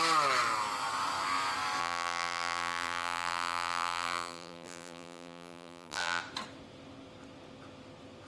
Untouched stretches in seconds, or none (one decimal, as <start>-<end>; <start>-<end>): 0.0-1.8; 6.2-8.3